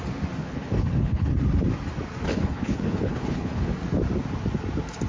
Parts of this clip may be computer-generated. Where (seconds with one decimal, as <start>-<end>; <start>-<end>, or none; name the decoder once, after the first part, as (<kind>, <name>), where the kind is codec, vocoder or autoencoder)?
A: 0.4-1.3 (codec, HILCodec); 2.3-3.7

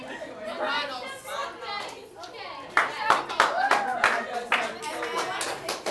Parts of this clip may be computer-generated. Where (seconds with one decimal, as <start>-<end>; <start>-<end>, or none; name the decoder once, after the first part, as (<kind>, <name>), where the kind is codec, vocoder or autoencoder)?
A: none